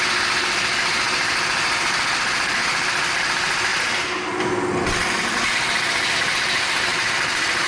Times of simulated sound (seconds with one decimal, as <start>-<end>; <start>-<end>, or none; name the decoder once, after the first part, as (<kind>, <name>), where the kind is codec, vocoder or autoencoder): none